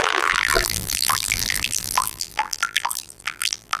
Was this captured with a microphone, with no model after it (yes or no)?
no